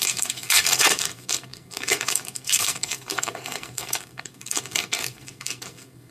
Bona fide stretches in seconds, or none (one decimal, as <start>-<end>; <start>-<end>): none